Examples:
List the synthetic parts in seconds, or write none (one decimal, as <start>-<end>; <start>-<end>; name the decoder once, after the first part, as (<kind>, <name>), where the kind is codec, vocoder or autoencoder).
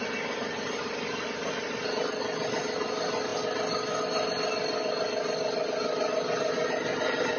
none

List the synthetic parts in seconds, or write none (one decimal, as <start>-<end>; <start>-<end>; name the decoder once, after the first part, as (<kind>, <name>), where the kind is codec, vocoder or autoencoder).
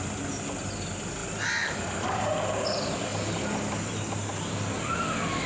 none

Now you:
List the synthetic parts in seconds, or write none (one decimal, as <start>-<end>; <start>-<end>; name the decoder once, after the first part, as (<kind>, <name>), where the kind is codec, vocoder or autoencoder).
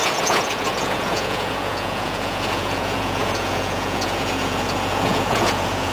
0.0-5.9 (vocoder, Vocos)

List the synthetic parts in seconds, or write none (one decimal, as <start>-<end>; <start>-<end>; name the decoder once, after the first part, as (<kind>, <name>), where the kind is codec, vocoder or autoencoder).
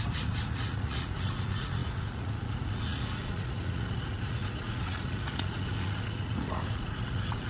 0.0-7.5 (vocoder, Vocos)